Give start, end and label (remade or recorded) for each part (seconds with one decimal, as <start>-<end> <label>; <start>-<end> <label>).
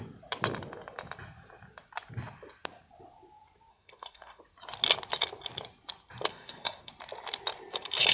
0.0-3.7 recorded; 3.7-4.4 remade; 4.4-6.3 recorded; 6.3-6.9 remade; 6.9-8.1 recorded